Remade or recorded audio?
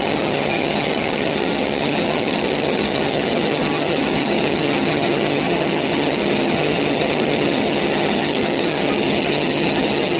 remade